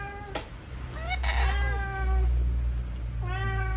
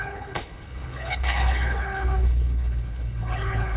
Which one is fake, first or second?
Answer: second